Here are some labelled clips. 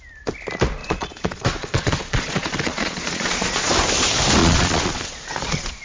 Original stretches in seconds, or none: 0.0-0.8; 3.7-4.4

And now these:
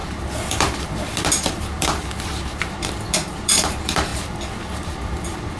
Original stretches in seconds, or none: 4.1-4.6

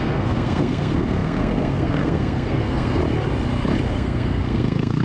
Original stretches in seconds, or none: 3.0-3.9

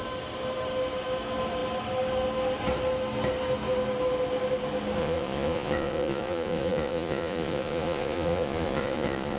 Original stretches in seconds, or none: 0.0-5.0

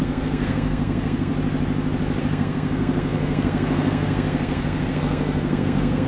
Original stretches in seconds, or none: 1.3-2.2

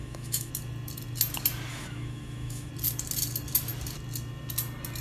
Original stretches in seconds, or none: 0.5-1.7; 2.7-5.0

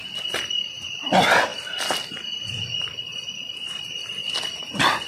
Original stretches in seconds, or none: 0.0-5.1

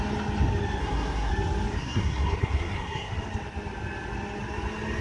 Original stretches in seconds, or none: 0.0-0.8; 1.3-1.8; 3.1-5.0